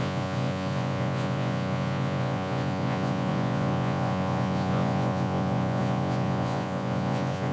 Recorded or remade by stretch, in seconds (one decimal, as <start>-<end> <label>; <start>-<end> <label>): 0.0-7.5 remade